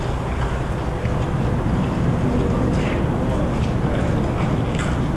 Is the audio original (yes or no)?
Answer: yes